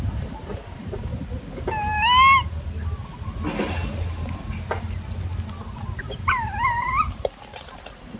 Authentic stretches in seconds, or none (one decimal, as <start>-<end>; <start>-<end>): 1.1-6.0